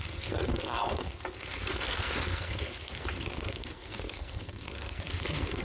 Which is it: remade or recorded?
remade